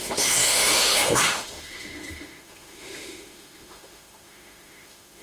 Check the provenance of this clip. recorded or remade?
remade